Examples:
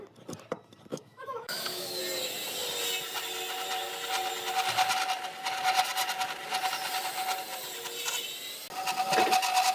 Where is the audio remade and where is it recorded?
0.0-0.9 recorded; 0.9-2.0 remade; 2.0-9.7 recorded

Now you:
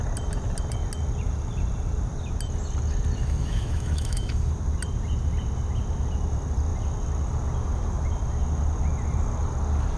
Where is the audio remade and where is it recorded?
0.0-3.2 recorded; 3.2-4.5 remade; 4.5-10.0 recorded

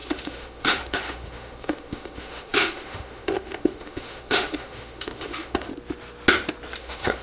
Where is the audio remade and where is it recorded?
0.0-5.7 remade; 5.7-6.8 recorded; 6.8-7.2 remade

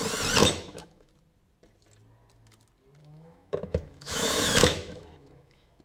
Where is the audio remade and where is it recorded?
0.0-0.4 recorded; 0.4-1.1 remade; 1.1-3.0 recorded; 3.0-5.8 remade

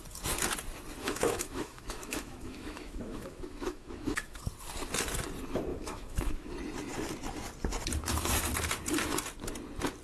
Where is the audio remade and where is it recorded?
0.0-1.0 recorded; 1.0-4.4 remade; 4.4-5.7 recorded; 5.7-6.5 remade; 6.5-10.0 recorded